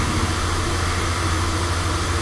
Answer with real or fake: real